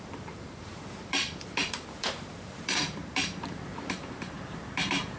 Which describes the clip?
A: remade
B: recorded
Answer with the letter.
A